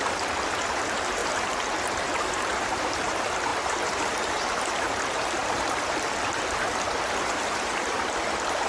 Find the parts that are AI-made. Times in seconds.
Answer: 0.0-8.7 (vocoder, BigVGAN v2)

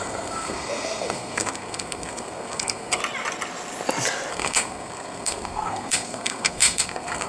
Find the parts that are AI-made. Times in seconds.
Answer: 0.0-3.0 (codec, SNAC); 4.3-7.3

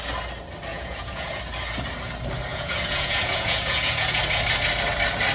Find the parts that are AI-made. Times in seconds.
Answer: 0.7-1.4 (vocoder, Vocos); 2.5-4.2

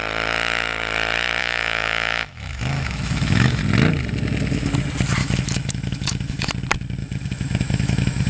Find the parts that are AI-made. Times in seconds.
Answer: 1.4-3.6 (autoencoder, DAC-VAE); 5.2-6.5; 7.0-8.3